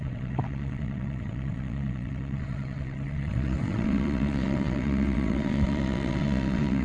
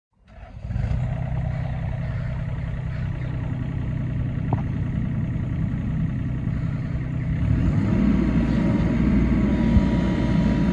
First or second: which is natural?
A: second